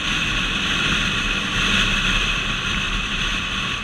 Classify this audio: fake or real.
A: real